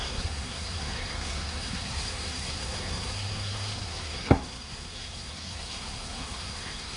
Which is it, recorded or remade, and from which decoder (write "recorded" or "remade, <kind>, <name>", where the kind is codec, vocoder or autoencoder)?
remade, codec, SNAC